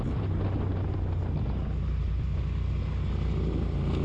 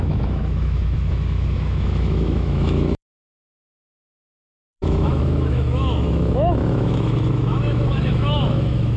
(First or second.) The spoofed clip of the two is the second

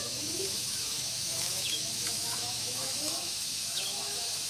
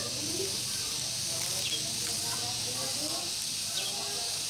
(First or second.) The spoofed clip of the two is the first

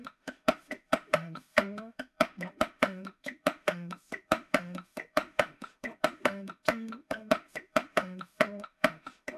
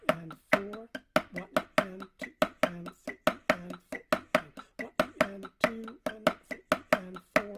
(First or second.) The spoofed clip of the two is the first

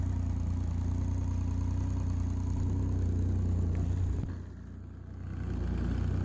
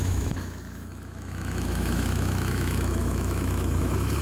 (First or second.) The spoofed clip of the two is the second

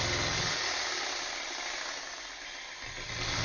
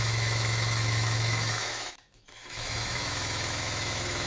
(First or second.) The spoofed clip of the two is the second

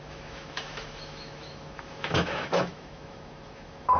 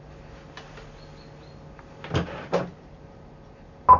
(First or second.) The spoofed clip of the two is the first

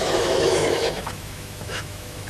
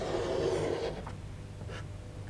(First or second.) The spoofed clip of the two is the first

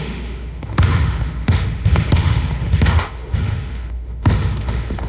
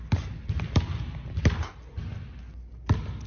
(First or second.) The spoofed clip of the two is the first